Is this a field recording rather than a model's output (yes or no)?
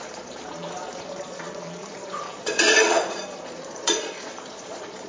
no